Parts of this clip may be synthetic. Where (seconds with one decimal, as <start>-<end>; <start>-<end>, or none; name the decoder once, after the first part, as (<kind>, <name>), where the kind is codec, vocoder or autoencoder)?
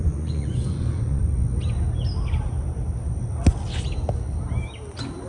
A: 0.0-1.2 (vocoder, Vocos)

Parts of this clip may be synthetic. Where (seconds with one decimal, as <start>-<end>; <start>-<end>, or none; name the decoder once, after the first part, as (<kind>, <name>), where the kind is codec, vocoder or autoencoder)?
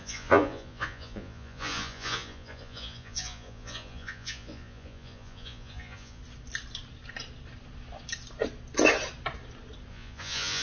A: 0.0-6.2 (vocoder, Vocos); 9.9-10.6